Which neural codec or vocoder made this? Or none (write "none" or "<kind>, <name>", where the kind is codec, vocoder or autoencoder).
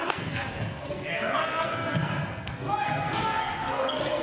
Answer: codec, SNAC